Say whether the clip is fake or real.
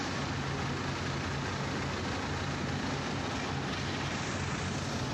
real